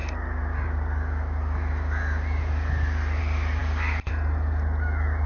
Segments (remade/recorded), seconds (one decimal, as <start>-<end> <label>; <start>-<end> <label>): 0.0-5.3 recorded